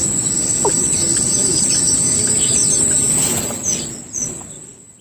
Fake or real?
real